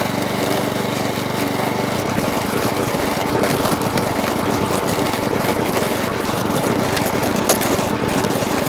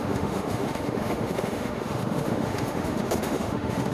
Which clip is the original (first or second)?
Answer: first